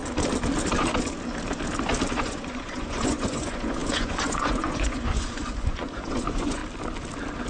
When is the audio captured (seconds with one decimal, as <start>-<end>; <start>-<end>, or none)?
0.0-2.2; 6.6-7.5